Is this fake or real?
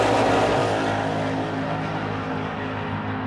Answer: real